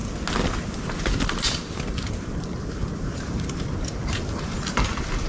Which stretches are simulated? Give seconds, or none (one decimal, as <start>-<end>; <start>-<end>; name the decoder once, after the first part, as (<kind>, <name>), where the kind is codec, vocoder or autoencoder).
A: 2.6-5.3 (vocoder, BigVGAN v2)